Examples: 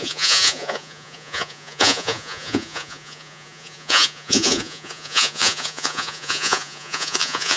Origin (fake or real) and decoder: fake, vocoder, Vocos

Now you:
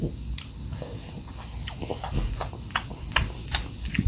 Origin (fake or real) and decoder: real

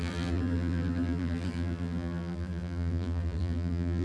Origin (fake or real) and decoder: fake, vocoder, BigVGAN v2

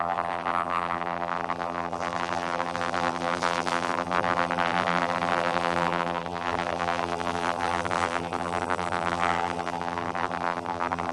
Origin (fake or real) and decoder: fake, vocoder, BigVGAN v2